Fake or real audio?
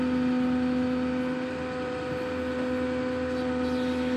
real